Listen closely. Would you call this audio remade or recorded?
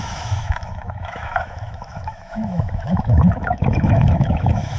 remade